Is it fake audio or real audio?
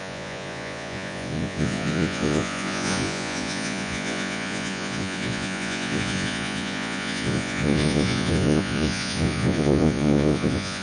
fake